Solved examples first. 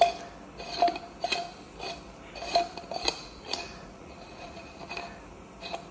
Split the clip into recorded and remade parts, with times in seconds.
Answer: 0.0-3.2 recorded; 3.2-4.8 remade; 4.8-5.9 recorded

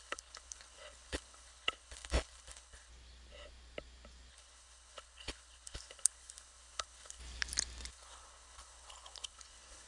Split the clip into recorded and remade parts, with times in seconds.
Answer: 0.0-2.9 remade; 2.9-4.3 recorded; 4.3-7.2 remade; 7.2-7.9 recorded; 7.9-9.9 remade

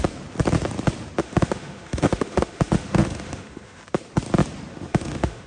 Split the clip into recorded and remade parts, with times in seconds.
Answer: 0.0-1.2 recorded; 1.2-3.8 remade; 3.8-4.7 recorded; 4.7-5.5 remade

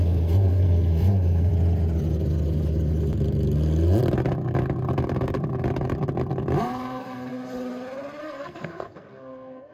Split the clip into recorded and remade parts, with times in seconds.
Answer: 0.0-1.5 remade; 1.5-6.6 recorded; 6.6-7.3 remade; 7.3-8.2 recorded; 8.2-9.7 remade

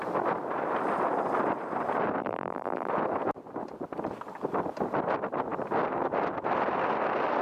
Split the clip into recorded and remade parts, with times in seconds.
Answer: 0.0-2.2 recorded; 2.2-2.9 remade; 2.9-7.4 recorded

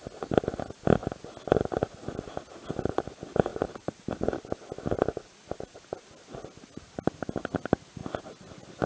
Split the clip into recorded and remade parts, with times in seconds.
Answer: 0.0-8.9 recorded

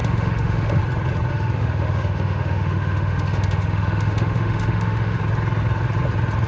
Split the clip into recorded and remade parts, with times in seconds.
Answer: 0.0-0.8 remade; 0.8-1.3 recorded; 1.3-5.2 remade; 5.2-6.5 recorded